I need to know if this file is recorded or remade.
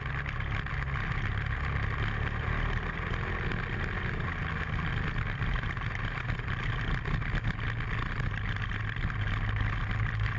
recorded